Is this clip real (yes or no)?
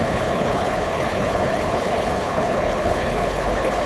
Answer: no